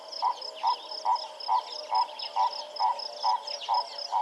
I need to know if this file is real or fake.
real